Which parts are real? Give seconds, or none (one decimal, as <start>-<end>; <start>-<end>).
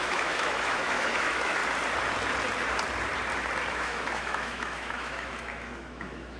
1.6-3.7